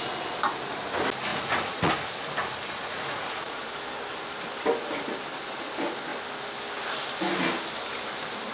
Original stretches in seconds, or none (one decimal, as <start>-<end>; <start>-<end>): 0.0-1.3; 1.9-2.8; 3.6-8.5